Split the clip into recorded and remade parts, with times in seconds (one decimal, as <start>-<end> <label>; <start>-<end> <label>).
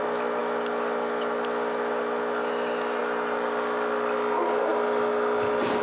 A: 0.0-5.8 recorded